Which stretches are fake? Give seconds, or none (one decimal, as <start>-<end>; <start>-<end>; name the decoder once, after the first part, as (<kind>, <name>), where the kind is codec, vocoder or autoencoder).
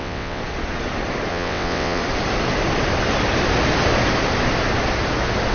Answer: 0.0-0.4 (vocoder, WaveNeXt); 1.3-2.0